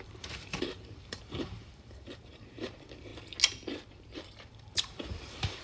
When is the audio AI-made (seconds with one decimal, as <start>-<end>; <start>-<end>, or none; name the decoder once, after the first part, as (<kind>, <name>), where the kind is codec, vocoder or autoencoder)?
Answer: 0.0-3.1 (vocoder, BigVGAN v2); 3.9-5.6